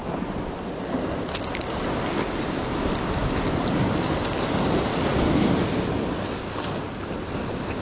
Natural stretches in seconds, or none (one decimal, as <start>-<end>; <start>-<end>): 4.2-7.2